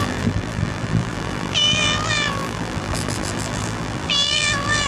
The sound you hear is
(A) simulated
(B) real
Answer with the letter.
A